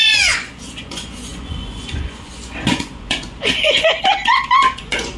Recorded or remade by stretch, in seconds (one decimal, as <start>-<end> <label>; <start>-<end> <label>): 0.0-5.2 remade